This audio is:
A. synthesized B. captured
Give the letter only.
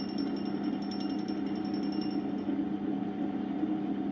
B